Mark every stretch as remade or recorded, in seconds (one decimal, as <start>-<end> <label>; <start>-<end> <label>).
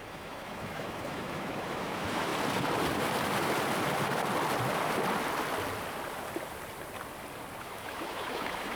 0.0-2.3 remade; 2.3-7.6 recorded; 7.6-8.8 remade